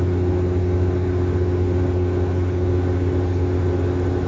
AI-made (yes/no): no